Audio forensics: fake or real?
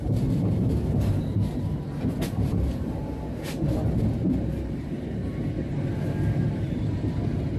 fake